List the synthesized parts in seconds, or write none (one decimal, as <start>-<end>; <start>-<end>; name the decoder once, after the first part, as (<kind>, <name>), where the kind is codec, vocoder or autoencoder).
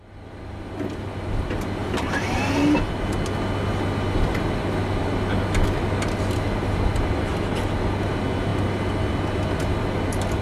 none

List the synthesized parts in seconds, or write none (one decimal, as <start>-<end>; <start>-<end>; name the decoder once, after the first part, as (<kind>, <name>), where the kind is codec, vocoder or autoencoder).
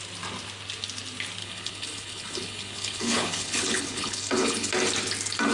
1.4-4.7 (codec, HILCodec)